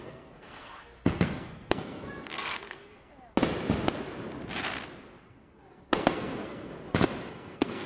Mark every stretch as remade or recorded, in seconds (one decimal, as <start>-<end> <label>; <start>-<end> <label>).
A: 0.0-3.1 remade; 3.1-5.2 recorded; 5.2-6.7 remade; 6.7-7.3 recorded; 7.3-7.9 remade